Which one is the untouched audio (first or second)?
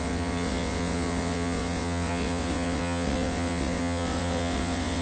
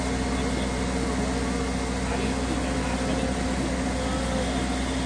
second